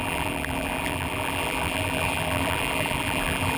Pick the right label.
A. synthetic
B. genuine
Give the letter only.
A